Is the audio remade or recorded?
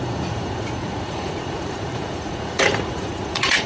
remade